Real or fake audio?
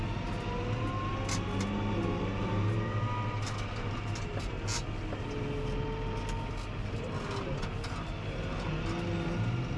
real